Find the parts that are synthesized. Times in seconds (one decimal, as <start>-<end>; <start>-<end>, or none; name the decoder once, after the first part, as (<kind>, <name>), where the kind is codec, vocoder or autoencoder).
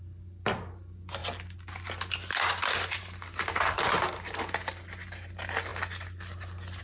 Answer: none